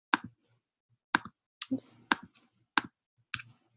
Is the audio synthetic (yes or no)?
no